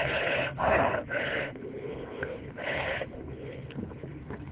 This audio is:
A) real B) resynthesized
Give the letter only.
B